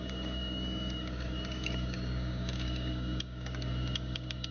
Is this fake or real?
fake